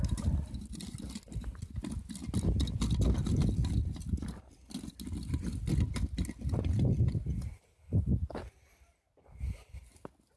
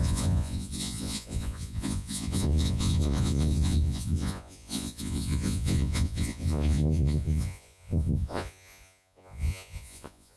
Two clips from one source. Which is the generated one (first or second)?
second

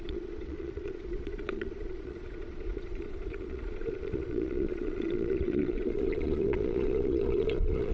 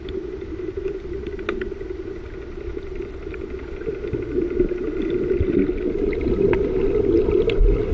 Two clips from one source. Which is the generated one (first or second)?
first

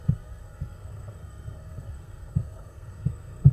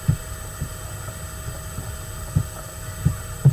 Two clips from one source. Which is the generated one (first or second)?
first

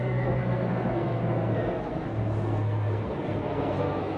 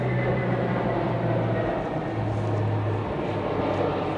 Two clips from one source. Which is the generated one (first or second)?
first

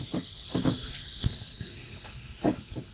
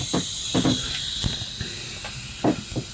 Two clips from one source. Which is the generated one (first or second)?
first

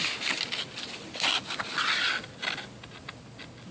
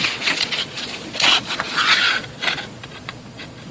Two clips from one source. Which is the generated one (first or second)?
second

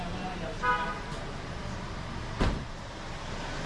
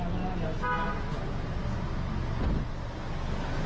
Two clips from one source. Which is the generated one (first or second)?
first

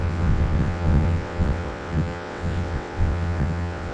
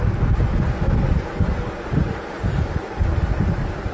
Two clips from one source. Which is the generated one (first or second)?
first